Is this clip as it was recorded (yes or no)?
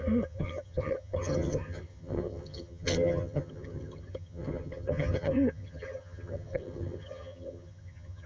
no